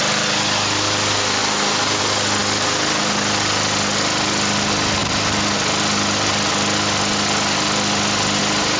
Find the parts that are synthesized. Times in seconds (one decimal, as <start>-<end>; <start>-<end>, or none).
none